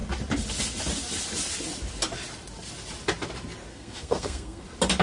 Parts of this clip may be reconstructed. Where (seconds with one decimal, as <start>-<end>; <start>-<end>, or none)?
3.7-4.6